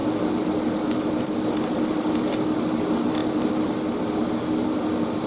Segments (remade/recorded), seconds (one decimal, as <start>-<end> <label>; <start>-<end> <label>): 0.0-5.3 recorded